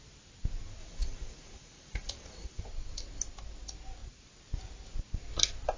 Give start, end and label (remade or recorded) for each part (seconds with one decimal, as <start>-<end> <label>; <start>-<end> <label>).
0.0-0.8 recorded; 0.8-2.6 remade; 2.6-5.8 recorded